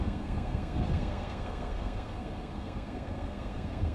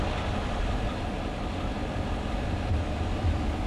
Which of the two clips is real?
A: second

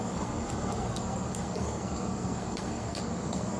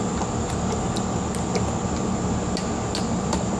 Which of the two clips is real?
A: second